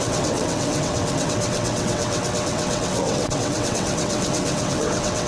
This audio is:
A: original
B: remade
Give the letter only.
B